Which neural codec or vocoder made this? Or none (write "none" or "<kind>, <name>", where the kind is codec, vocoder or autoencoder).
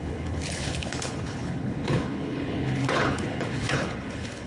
codec, HILCodec